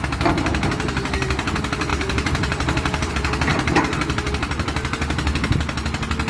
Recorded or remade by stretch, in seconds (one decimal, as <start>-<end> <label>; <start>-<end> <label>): 0.0-1.9 recorded; 1.9-3.1 remade; 3.1-3.5 recorded; 3.5-4.3 remade; 4.3-6.3 recorded